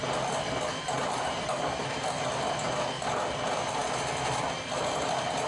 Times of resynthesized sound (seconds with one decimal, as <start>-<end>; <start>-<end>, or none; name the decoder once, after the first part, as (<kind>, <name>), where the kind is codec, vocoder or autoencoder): none